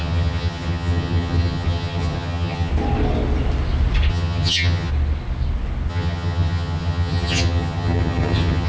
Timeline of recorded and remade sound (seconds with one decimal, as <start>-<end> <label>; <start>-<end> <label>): 0.0-2.7 remade; 2.7-4.1 recorded; 4.1-4.9 remade; 4.9-5.9 recorded; 5.9-8.7 remade